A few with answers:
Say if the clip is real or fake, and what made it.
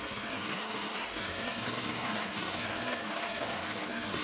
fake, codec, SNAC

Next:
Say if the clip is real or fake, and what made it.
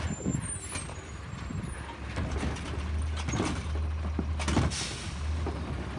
real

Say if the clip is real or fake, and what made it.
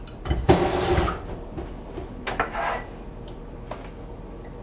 real